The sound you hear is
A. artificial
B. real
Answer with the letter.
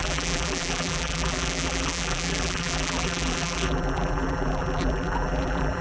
A